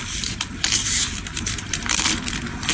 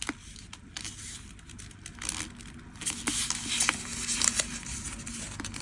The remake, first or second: first